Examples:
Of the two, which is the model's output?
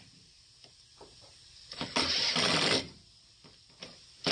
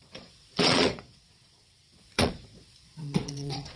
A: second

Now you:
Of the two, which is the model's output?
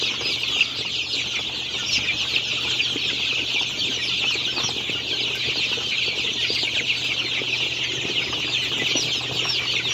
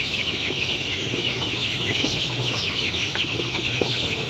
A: second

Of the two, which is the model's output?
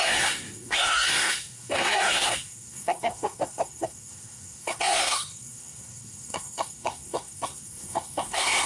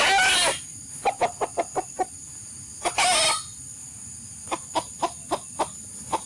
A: first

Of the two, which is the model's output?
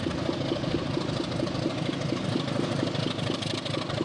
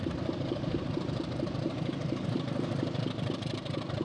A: second